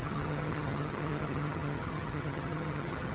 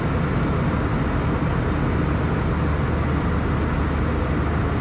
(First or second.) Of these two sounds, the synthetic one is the first